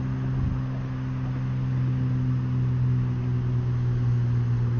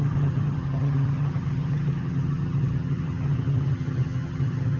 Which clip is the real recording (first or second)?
first